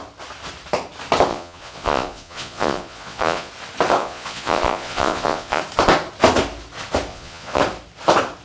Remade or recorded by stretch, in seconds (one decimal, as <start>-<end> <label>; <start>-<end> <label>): 0.0-1.3 recorded; 1.3-3.5 remade; 3.5-4.0 recorded; 4.0-5.6 remade; 5.6-7.1 recorded; 7.1-7.6 remade; 7.6-8.4 recorded